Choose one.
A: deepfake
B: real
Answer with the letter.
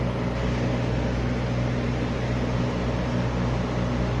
B